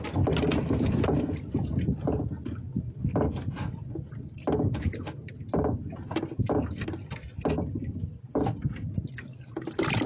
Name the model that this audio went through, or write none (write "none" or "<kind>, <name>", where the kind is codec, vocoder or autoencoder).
none